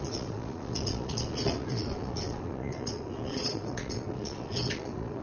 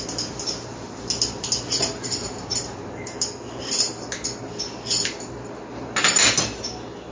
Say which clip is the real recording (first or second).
second